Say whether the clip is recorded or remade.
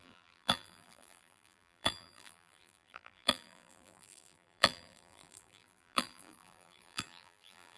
remade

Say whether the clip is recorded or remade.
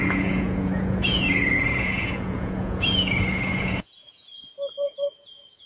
remade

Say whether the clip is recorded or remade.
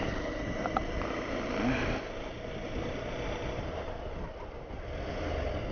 recorded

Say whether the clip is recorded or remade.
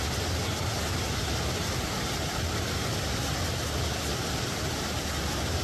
recorded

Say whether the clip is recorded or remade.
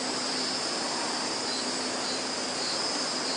recorded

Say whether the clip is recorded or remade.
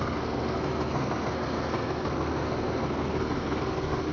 remade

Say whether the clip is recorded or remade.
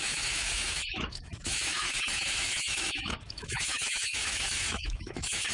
remade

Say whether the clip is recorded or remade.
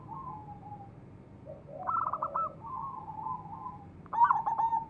recorded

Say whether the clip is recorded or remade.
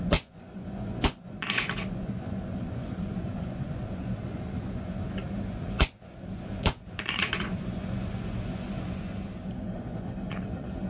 remade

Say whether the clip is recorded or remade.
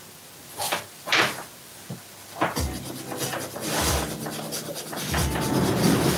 recorded